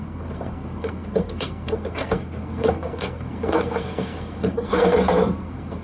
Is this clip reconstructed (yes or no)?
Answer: yes